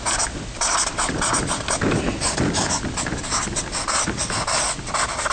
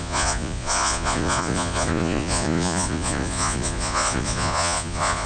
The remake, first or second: second